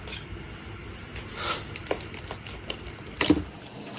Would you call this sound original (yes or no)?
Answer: yes